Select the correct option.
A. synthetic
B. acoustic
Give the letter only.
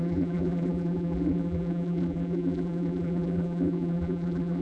A